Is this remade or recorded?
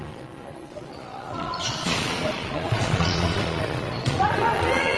remade